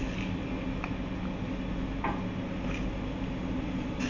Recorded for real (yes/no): yes